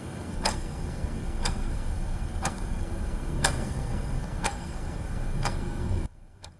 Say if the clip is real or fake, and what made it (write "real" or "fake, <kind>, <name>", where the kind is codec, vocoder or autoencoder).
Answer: fake, codec, SNAC